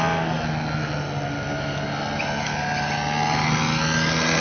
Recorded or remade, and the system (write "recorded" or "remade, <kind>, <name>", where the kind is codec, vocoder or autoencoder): recorded